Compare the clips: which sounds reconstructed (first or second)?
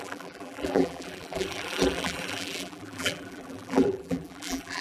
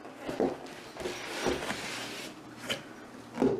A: first